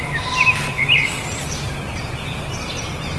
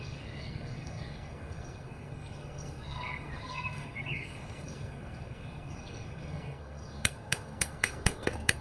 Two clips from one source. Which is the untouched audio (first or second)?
first